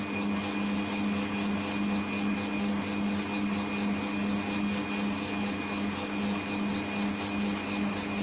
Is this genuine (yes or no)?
yes